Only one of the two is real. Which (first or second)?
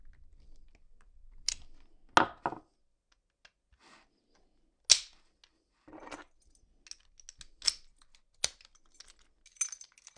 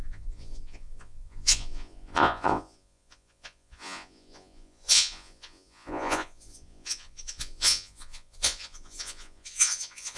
first